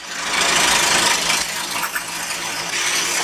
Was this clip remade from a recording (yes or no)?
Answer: no